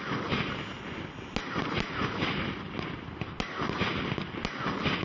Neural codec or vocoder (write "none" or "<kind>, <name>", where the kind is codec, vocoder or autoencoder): none